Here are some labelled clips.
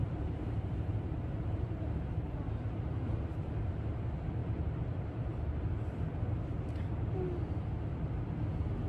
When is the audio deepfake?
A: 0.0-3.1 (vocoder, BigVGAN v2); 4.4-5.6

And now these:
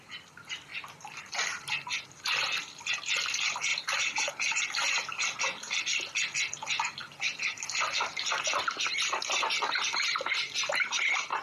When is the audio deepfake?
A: 3.7-4.3 (vocoder, BigVGAN v2); 7.0-8.9

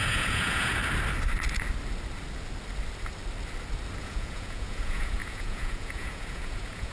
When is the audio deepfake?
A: 0.0-0.8 (vocoder, Vocos); 4.0-6.9

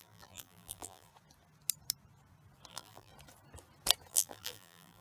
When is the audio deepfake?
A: 0.0-1.1 (vocoder, BigVGAN v2); 2.7-3.1; 4.1-5.0

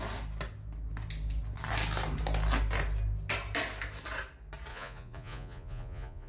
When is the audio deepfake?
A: 4.7-6.3 (vocoder, Vocos)

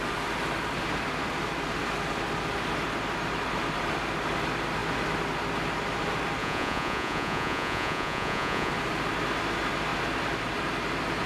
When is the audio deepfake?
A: 6.4-8.7 (vocoder, Vocos)